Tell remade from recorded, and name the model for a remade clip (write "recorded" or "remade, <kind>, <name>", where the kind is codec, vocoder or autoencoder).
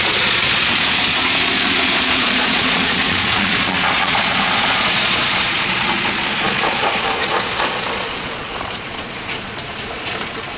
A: remade, vocoder, Vocos